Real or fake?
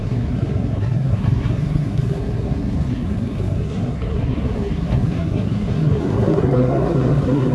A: fake